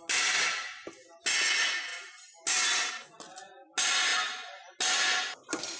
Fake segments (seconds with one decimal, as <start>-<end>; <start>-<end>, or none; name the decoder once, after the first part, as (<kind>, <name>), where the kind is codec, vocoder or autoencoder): none